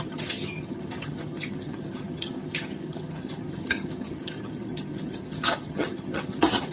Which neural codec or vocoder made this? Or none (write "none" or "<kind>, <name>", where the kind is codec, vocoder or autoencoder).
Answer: vocoder, HiFi-GAN